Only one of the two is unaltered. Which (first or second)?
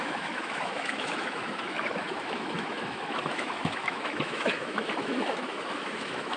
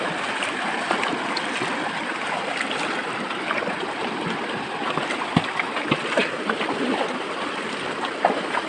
second